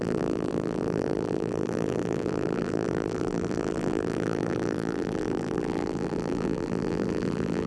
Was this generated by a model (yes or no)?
yes